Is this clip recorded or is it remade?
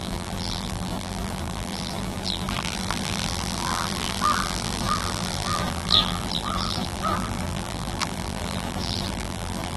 remade